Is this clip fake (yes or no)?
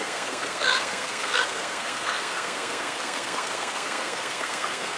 yes